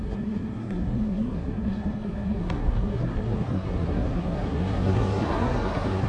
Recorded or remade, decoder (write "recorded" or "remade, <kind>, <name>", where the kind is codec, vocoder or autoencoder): remade, codec, SNAC